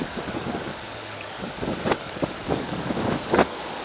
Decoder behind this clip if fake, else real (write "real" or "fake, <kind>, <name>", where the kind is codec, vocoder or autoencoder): fake, codec, DAC